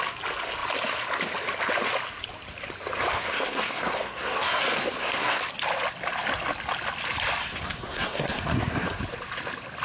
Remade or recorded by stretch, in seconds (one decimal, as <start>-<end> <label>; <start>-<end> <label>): 0.0-3.1 recorded; 3.1-5.4 remade; 5.4-7.4 recorded; 7.4-9.0 remade; 9.0-9.8 recorded